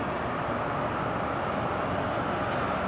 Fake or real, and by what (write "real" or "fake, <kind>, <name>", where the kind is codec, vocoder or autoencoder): real